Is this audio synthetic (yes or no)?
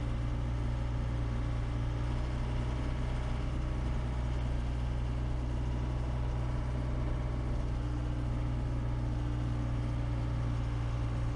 no